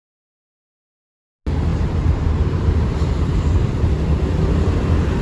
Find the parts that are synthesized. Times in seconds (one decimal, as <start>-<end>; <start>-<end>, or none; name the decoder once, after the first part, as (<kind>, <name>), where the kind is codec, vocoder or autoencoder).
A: 1.7-3.9 (vocoder, BigVGAN v2)